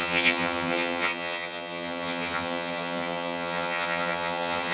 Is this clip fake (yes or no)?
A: yes